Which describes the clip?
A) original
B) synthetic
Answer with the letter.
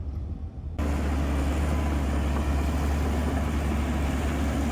A